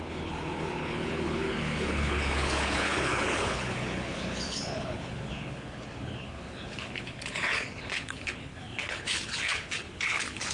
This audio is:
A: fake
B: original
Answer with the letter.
A